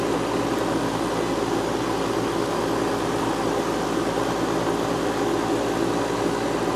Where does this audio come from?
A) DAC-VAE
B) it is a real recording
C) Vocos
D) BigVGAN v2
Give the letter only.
B